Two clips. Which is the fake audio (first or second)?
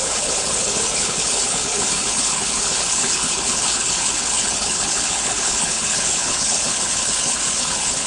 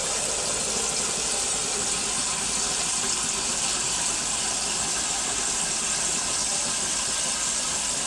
first